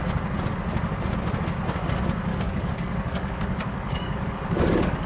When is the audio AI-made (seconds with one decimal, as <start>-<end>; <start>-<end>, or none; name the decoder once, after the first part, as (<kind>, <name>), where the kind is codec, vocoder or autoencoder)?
2.3-5.1 (codec, DAC)